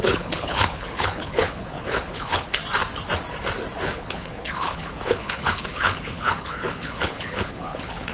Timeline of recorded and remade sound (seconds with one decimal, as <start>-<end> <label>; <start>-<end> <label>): 0.0-2.6 remade; 2.6-3.8 recorded; 3.8-8.1 remade